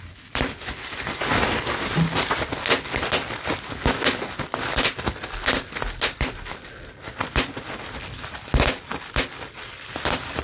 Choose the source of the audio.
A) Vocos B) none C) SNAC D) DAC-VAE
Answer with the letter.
B